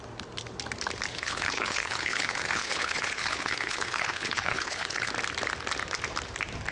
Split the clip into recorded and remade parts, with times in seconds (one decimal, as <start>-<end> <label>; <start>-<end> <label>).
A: 0.0-1.1 recorded; 1.1-5.1 remade; 5.1-6.7 recorded